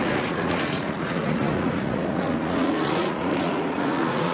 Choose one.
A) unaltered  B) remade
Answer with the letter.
B